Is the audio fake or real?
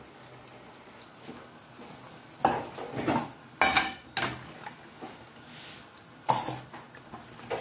real